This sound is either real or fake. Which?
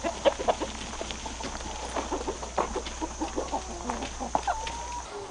real